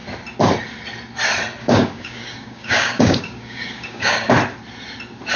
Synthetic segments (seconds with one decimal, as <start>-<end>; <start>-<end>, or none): 1.6-4.3